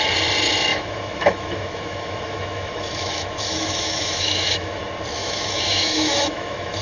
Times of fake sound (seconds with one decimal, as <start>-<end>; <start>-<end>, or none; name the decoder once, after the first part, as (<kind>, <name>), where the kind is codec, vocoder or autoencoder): 0.7-4.8 (autoencoder, DAC-VAE); 5.2-6.8